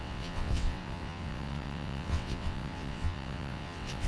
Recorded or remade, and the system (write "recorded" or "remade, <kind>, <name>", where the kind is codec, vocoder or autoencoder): remade, vocoder, WaveNeXt